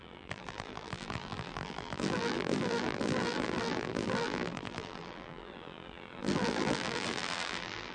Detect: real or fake fake